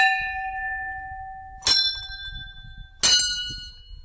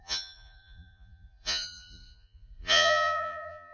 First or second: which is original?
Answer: first